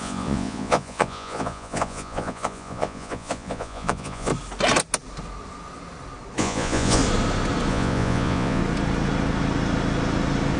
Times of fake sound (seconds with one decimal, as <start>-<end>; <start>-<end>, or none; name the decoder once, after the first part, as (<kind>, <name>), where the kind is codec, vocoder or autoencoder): 0.0-4.3 (vocoder, Vocos); 6.4-7.0; 7.7-8.6